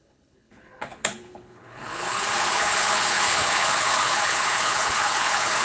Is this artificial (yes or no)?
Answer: yes